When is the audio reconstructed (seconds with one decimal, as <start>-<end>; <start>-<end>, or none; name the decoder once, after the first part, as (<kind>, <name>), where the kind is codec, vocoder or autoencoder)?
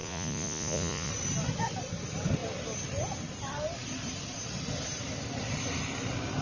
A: 0.0-1.1 (vocoder, Vocos)